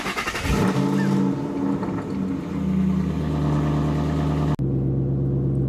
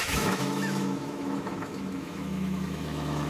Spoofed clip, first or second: second